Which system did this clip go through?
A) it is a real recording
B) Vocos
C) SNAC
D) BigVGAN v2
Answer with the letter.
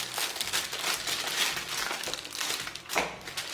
A